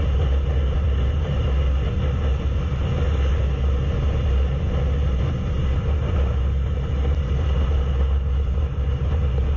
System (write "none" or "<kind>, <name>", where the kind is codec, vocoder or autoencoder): none